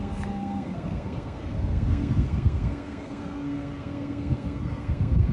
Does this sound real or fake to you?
fake